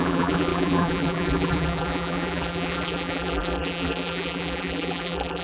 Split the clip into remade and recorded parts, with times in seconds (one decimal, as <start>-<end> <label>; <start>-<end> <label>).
0.0-5.4 remade